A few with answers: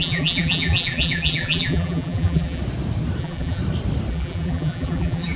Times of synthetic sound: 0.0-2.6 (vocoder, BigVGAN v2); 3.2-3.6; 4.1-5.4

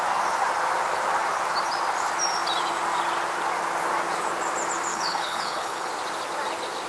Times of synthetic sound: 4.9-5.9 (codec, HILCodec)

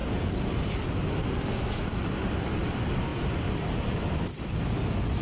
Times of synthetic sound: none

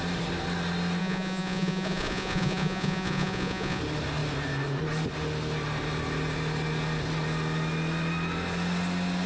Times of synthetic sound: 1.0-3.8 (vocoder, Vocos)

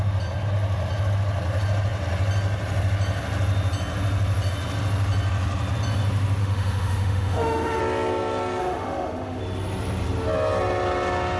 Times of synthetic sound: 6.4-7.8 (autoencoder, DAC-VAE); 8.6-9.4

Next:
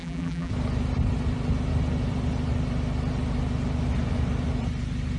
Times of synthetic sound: 0.0-0.5 (vocoder, BigVGAN v2)

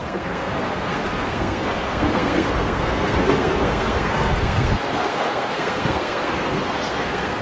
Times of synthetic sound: 0.0-7.4 (codec, SNAC)